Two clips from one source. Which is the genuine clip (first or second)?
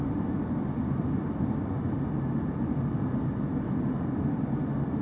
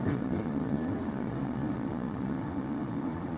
first